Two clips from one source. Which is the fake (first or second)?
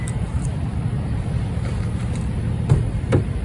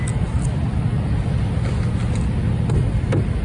first